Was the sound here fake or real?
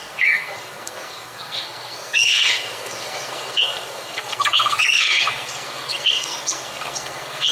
fake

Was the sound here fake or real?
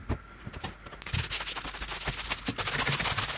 real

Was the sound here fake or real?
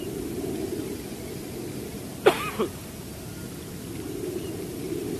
real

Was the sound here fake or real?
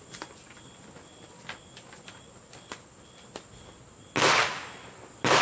real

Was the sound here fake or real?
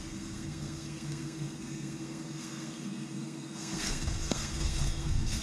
fake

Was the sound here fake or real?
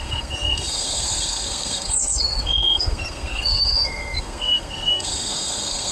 fake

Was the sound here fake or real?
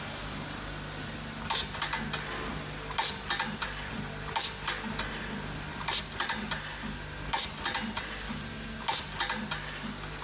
real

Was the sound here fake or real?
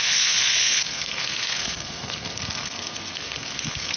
fake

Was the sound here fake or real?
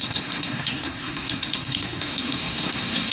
fake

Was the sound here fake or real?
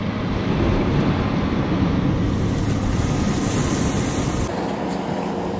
real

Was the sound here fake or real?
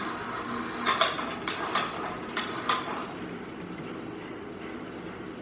real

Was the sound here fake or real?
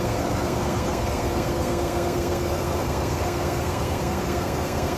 fake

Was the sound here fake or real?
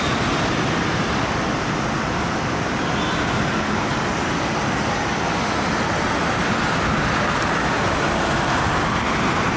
real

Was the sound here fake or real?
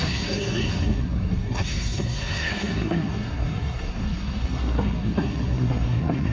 fake